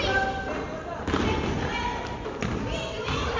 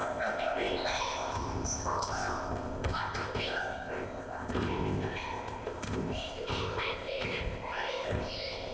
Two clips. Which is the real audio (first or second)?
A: first